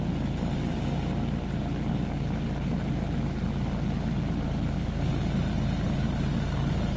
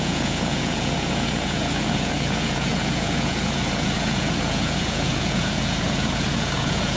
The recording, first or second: first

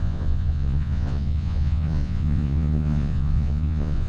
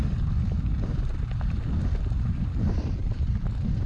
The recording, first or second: second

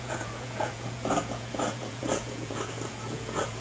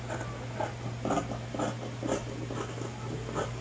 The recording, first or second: second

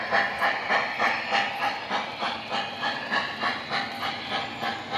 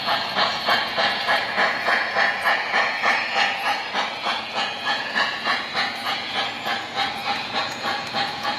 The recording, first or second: first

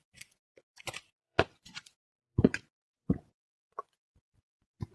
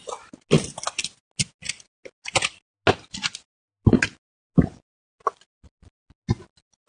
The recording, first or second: second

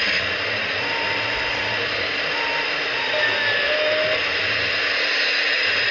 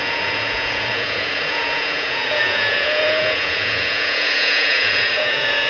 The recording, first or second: first